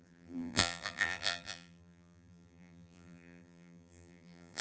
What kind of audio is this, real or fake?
fake